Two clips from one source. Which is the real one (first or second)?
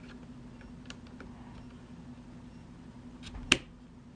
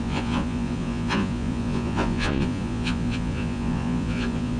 first